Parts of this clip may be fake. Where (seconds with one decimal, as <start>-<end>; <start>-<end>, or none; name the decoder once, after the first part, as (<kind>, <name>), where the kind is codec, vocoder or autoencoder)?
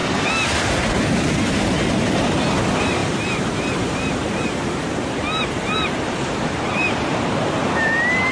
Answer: 2.4-8.3 (vocoder, BigVGAN v2)